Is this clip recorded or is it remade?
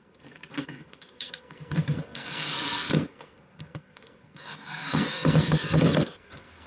remade